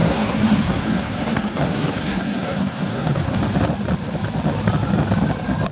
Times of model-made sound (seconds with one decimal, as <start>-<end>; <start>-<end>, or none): 0.0-3.4